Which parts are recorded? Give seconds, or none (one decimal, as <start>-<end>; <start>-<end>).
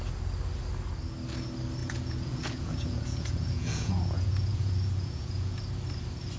0.0-1.8; 5.6-6.4